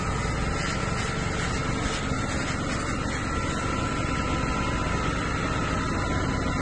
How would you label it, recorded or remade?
recorded